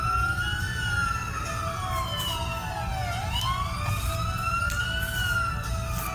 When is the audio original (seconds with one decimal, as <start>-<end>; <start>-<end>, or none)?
0.0-6.1